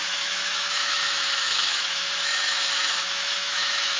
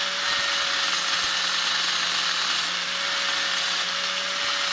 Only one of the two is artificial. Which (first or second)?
first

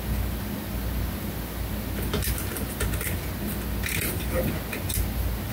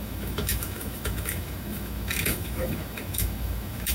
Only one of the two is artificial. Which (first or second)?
second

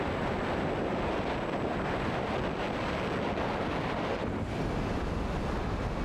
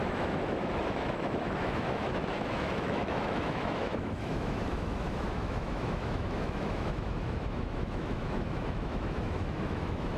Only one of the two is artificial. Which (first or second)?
second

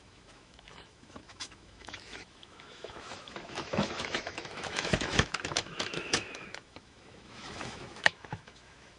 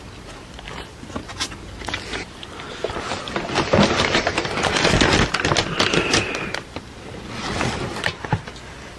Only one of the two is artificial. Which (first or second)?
first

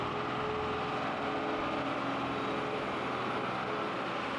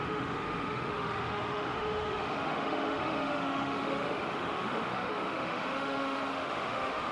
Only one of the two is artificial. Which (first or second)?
second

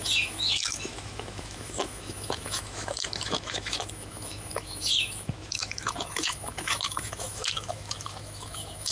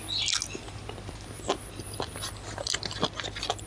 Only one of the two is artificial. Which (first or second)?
first